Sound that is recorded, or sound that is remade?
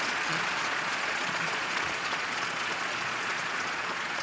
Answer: remade